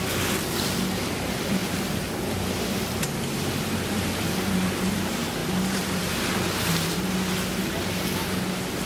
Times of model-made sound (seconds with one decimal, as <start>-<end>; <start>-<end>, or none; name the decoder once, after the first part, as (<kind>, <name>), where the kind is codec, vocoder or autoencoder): 1.6-2.2 (vocoder, BigVGAN v2); 5.4-6.2